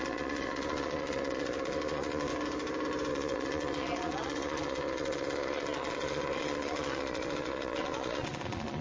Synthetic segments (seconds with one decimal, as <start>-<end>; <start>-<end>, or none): 0.0-2.3; 3.1-8.8